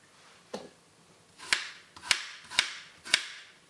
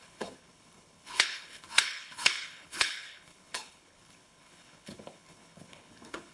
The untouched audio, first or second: first